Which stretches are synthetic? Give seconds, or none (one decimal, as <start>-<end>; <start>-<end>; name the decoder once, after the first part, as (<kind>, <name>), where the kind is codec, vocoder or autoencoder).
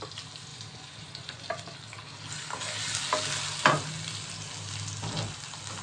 0.5-1.4 (vocoder, Vocos)